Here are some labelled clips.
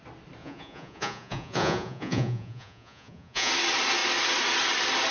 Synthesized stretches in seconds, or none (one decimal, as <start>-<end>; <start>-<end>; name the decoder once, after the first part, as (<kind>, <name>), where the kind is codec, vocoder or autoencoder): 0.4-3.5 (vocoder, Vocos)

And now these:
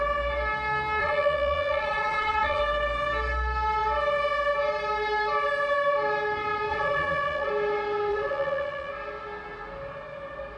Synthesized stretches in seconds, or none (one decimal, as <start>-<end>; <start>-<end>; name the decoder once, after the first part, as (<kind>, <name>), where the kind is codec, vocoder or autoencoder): 1.0-2.6 (vocoder, Vocos); 6.7-7.5; 8.1-8.9

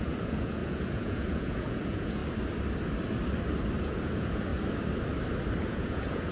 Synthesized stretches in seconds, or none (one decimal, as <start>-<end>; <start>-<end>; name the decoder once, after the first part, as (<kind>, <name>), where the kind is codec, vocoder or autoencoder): 0.0-2.2 (vocoder, Vocos); 3.8-4.5; 5.6-6.3

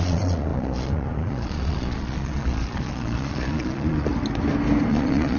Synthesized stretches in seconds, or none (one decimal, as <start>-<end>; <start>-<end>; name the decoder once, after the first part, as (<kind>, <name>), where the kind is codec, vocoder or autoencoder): 0.0-4.1 (vocoder, Vocos); 4.9-5.4

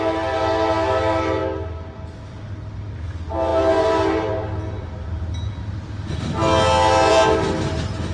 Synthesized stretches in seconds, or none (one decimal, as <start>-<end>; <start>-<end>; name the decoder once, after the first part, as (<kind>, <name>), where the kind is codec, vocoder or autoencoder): none

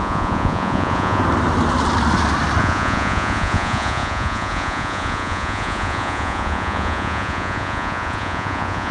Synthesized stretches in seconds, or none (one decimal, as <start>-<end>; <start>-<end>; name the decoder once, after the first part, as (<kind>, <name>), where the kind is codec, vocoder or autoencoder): 0.0-1.2 (vocoder, Vocos); 2.6-8.9

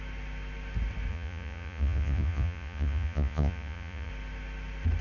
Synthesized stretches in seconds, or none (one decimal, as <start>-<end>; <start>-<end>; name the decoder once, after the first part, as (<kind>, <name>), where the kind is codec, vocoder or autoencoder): 1.1-4.1 (vocoder, Vocos)